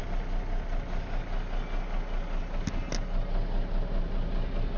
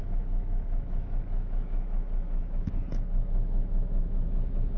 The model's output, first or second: second